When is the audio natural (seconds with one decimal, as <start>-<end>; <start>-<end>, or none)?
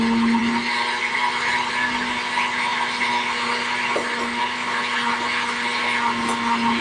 0.0-6.8